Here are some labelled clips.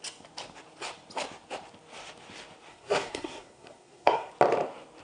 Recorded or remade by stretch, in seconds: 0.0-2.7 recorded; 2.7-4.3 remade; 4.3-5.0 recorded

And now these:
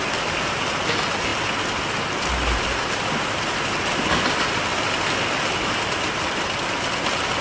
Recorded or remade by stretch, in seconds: 0.0-7.4 recorded

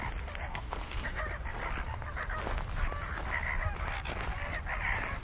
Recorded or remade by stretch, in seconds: 0.0-0.5 recorded; 0.5-1.2 remade; 1.2-5.2 recorded